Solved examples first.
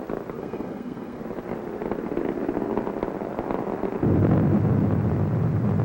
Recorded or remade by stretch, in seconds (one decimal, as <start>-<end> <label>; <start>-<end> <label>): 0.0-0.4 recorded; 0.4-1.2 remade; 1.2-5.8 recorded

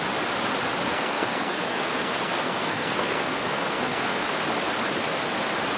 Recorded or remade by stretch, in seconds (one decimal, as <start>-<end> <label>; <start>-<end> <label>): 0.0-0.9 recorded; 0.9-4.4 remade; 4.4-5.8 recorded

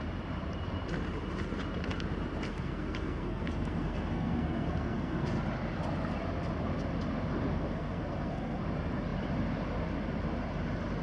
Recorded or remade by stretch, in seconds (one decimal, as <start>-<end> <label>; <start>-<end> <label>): 0.0-2.5 recorded; 2.5-5.4 remade; 5.4-7.5 recorded; 7.5-8.6 remade; 8.6-11.0 recorded

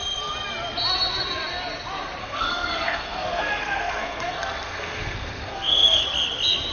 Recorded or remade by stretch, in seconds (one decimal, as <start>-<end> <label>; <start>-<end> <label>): 0.0-2.2 recorded; 2.2-6.0 remade; 6.0-6.7 recorded

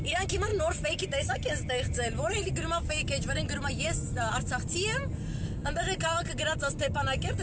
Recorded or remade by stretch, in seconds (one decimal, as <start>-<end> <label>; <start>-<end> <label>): 0.0-7.4 recorded

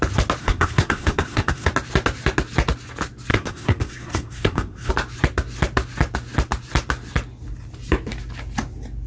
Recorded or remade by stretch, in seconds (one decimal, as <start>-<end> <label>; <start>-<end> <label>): 0.0-0.4 recorded; 0.4-1.7 remade; 1.7-3.3 recorded; 3.3-4.9 remade; 4.9-9.1 recorded

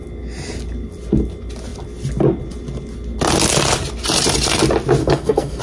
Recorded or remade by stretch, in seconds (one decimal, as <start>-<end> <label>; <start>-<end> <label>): 0.0-5.0 recorded; 5.0-5.6 remade

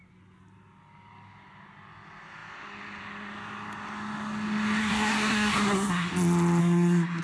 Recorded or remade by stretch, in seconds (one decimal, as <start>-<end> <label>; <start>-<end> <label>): 0.0-4.8 recorded; 4.8-6.1 remade; 6.1-6.6 recorded; 6.6-7.2 remade